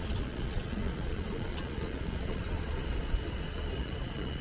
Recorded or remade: remade